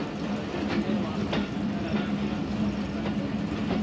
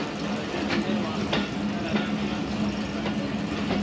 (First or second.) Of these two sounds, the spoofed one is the first